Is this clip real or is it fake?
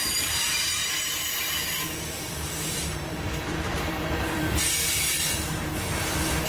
fake